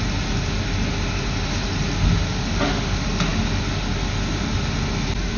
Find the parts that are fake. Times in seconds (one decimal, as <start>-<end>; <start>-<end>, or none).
none